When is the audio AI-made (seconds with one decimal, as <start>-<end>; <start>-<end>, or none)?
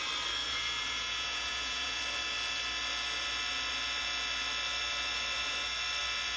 0.4-2.0